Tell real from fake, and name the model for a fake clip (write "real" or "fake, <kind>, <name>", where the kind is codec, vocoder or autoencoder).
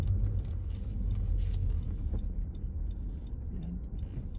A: real